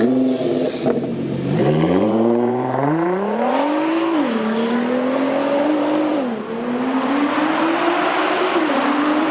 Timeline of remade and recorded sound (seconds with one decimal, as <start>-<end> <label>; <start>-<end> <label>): 0.0-1.1 recorded; 1.1-3.5 remade; 3.5-8.2 recorded; 8.2-8.9 remade; 8.9-9.3 recorded